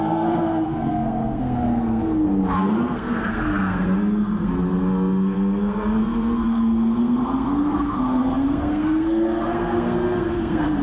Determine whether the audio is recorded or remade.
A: remade